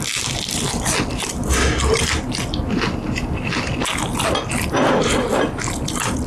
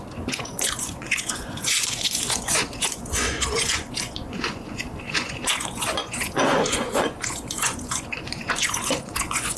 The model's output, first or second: second